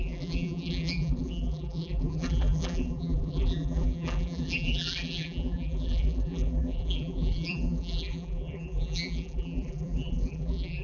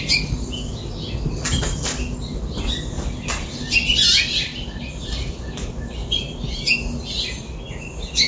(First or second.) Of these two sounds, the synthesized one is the first